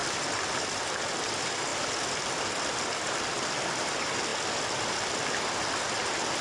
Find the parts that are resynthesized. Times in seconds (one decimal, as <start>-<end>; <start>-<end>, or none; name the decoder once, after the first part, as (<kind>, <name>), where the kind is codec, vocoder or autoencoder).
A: 0.0-1.1 (vocoder, BigVGAN v2); 1.7-2.8; 4.3-5.1